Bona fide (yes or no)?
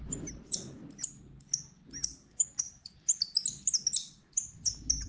yes